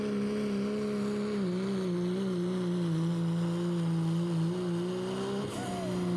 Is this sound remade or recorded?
recorded